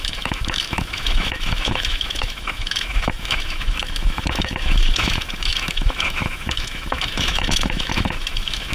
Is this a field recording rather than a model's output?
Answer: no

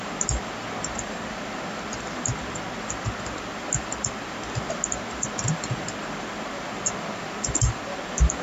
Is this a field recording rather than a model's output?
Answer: yes